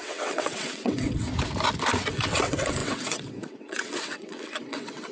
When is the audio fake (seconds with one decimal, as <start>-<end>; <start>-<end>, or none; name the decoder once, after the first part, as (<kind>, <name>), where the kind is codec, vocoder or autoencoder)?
0.0-1.3 (vocoder, WaveNeXt); 2.1-5.1